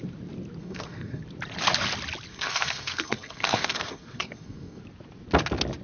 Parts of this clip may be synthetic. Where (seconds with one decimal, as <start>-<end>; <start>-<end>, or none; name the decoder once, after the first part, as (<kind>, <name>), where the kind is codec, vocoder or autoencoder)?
0.6-1.2 (codec, SNAC); 2.3-4.8